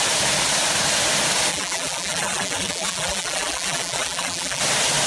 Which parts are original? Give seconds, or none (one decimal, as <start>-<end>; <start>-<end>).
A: 0.0-1.5; 4.6-5.1